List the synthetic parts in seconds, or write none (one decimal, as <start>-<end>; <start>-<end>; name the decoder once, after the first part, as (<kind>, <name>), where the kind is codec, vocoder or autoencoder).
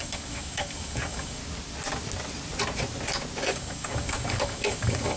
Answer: 0.0-1.4 (codec, DAC); 3.5-5.2